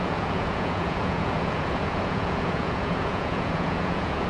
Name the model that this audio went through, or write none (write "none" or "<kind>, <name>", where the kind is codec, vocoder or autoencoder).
vocoder, Vocos